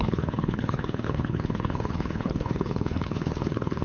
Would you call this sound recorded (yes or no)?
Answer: no